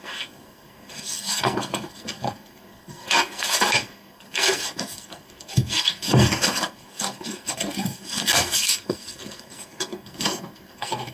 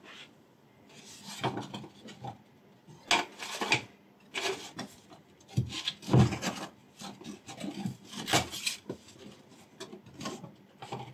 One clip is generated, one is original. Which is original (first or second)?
second